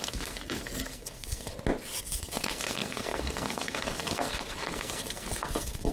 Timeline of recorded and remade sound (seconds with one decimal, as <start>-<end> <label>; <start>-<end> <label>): 0.0-1.5 remade; 1.5-2.0 recorded; 2.0-5.9 remade